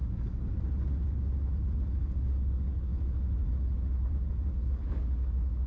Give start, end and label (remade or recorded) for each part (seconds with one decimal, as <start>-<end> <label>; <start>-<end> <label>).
0.0-0.5 remade; 0.5-2.0 recorded; 2.0-2.9 remade; 2.9-4.7 recorded; 4.7-5.7 remade